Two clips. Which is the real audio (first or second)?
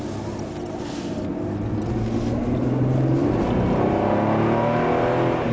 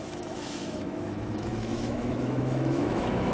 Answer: first